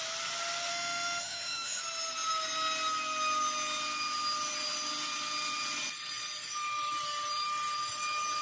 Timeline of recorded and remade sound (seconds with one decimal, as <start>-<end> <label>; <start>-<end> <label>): 0.0-0.7 recorded; 0.7-1.8 remade; 1.8-8.4 recorded